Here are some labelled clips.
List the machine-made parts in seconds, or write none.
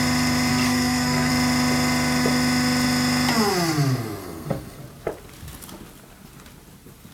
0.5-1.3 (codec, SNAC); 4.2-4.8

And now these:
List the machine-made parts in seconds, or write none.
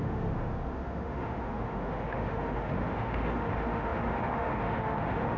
0.0-5.4 (autoencoder, DAC-VAE)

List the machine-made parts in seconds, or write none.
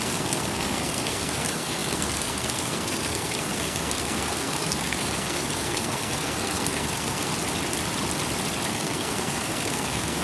0.0-7.3 (codec, SNAC); 8.7-10.2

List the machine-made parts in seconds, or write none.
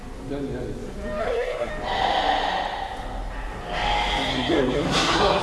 1.2-1.7 (codec, SNAC); 4.3-5.4